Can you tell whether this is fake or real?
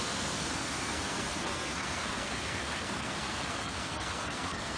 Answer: fake